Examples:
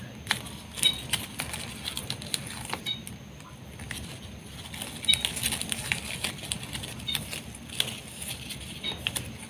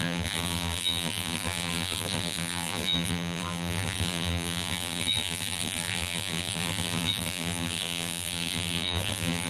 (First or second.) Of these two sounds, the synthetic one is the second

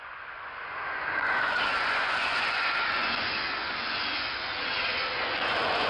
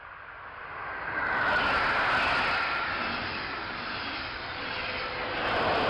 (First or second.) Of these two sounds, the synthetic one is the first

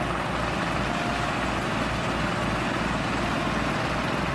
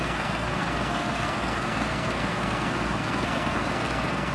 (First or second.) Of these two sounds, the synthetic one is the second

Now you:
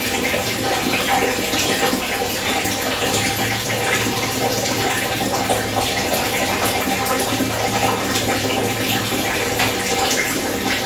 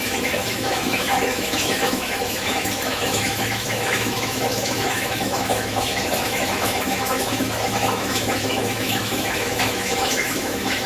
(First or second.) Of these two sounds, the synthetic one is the second